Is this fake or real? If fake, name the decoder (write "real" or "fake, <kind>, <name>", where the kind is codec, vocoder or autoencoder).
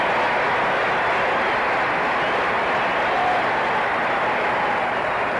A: real